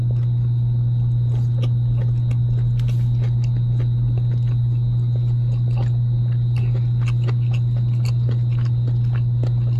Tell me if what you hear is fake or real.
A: real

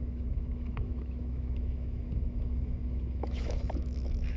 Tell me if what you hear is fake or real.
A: fake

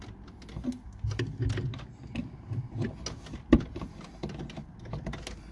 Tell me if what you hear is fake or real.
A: real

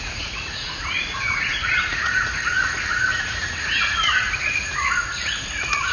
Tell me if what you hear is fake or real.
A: fake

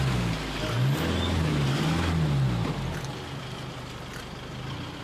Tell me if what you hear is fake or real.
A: real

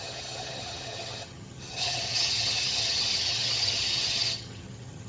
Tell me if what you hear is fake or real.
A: fake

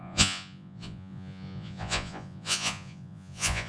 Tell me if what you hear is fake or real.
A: fake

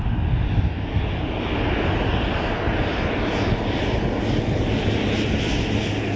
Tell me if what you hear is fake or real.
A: real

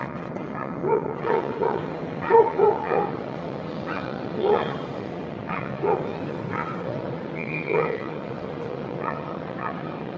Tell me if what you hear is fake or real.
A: fake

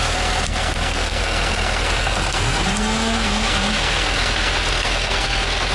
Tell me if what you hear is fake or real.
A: fake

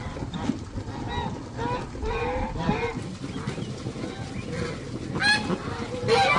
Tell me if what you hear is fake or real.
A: real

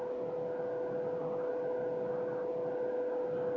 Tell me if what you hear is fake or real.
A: real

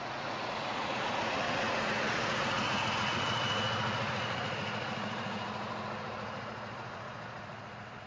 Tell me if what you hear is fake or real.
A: fake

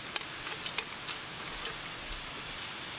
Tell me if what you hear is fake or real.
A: real